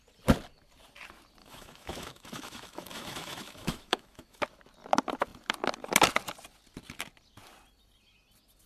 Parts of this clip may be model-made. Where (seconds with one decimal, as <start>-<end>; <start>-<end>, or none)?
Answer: 1.4-4.4